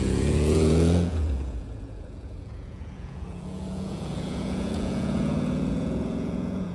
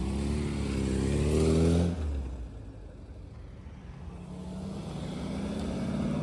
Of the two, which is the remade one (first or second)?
first